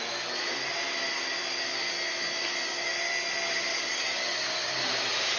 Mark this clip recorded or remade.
recorded